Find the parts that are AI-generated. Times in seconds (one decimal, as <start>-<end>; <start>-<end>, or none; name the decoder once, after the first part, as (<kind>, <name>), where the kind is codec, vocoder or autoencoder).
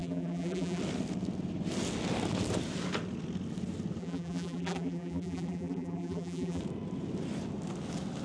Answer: 0.0-0.8 (vocoder, BigVGAN v2); 4.0-6.6